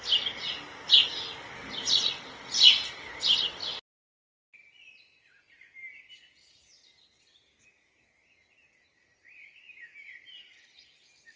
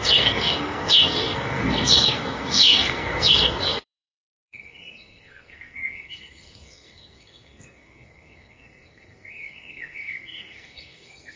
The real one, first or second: first